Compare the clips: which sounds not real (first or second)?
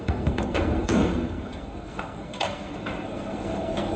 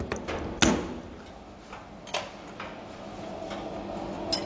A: first